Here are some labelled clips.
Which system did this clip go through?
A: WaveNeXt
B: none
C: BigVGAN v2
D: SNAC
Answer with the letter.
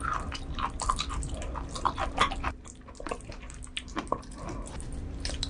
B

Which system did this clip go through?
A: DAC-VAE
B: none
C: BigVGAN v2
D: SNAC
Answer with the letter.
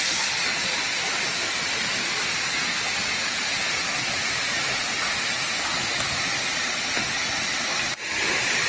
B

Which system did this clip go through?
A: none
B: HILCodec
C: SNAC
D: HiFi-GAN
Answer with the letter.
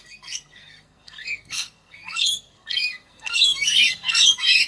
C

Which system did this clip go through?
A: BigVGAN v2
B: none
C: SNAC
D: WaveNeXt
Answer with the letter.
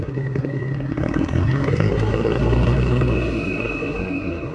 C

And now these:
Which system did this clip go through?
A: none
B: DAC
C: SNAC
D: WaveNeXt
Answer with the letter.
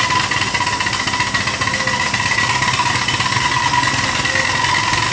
A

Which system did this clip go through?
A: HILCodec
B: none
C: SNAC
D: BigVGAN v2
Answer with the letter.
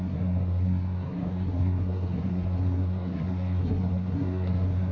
C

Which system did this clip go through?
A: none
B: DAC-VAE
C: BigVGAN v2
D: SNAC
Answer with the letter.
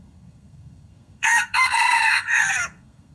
D